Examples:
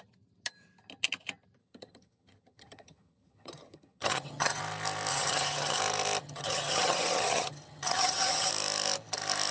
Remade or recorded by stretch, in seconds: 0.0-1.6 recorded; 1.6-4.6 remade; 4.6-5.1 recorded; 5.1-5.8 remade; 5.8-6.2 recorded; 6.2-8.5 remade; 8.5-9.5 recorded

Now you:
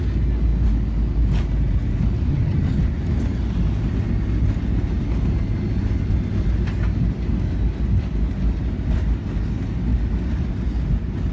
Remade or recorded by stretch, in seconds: 0.0-2.3 recorded; 2.3-2.8 remade; 2.8-11.3 recorded